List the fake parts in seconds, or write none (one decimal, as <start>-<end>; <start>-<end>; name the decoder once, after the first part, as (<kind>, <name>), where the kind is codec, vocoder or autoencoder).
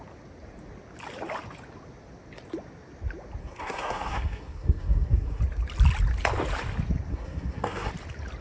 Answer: 3.4-5.4 (codec, SNAC); 7.1-7.9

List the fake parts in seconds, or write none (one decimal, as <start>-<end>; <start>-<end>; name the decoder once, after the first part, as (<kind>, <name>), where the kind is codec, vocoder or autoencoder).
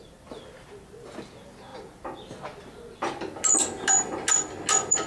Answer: none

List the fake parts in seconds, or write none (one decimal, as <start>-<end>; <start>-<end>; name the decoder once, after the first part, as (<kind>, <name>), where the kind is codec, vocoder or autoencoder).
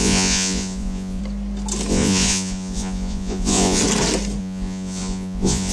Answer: 0.0-1.2 (vocoder, Vocos); 1.9-3.8; 4.4-5.7